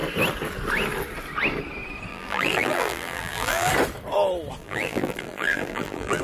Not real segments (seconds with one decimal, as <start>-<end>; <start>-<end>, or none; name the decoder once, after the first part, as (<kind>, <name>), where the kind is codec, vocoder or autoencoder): 2.1-3.7 (vocoder, BigVGAN v2); 4.6-6.2